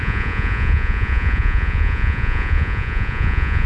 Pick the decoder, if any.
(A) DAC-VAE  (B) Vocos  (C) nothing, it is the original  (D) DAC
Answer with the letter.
B